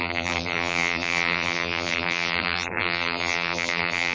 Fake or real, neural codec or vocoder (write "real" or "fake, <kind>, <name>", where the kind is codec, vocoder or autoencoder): fake, vocoder, BigVGAN v2